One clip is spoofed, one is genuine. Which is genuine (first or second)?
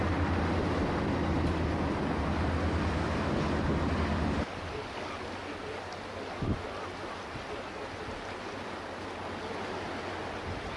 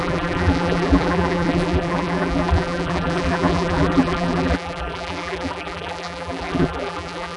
first